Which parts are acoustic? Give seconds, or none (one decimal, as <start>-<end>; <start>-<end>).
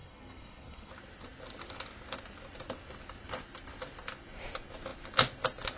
0.9-5.8